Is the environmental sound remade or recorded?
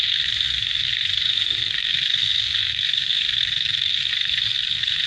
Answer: remade